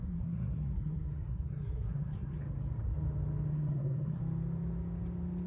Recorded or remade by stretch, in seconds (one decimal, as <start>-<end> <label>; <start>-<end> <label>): 0.0-2.4 remade; 2.4-3.5 recorded; 3.5-4.2 remade; 4.2-5.5 recorded